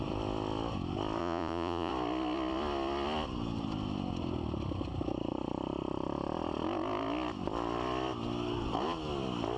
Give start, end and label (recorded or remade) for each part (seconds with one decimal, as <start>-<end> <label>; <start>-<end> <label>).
0.0-1.2 recorded; 1.2-1.9 remade; 1.9-9.6 recorded